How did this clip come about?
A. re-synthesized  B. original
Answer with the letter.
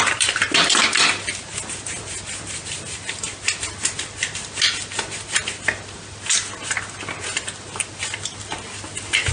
B